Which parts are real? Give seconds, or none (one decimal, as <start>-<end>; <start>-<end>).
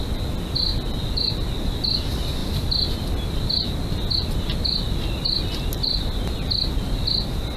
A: 0.0-2.4; 3.5-7.6